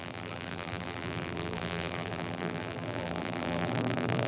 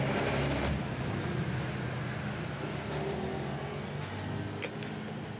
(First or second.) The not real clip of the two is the first